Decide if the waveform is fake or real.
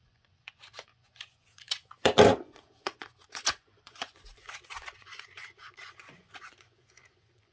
fake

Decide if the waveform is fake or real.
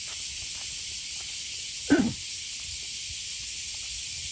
real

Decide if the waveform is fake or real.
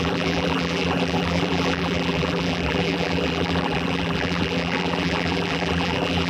fake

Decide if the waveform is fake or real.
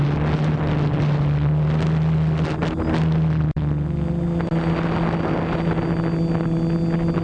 real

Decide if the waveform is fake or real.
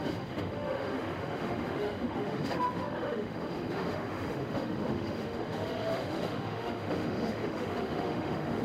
fake